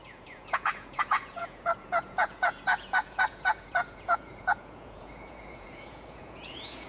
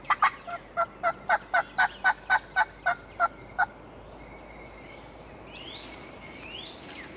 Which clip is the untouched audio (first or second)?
second